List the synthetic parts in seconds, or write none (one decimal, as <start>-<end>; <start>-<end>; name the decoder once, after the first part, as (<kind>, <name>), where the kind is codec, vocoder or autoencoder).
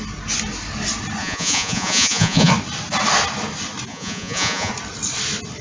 1.2-2.5 (vocoder, Vocos); 3.9-4.7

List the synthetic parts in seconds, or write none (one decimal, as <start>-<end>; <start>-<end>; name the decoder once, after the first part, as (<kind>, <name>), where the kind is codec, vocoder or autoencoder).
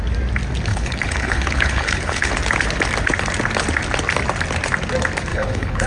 0.7-2.3 (codec, HILCodec); 5.3-5.9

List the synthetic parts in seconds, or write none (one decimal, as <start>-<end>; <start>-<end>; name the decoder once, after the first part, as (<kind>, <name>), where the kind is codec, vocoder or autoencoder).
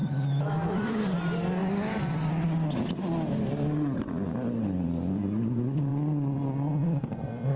0.0-1.0 (autoencoder, DAC-VAE)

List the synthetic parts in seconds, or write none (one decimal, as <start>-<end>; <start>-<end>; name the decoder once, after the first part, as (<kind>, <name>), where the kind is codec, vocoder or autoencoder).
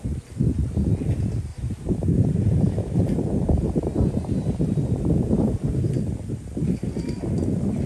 1.5-5.9 (vocoder, BigVGAN v2)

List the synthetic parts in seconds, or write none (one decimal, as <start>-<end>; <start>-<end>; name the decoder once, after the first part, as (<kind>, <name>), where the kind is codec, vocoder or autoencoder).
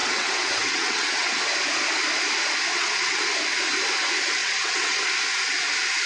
0.0-1.4 (vocoder, WaveNeXt); 2.7-3.2; 4.4-5.1